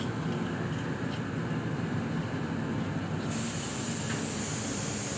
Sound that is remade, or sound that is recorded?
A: recorded